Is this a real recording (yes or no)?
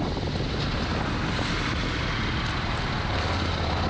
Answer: yes